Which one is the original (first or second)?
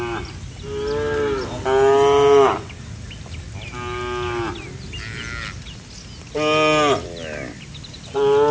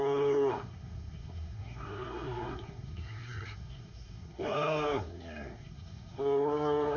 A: first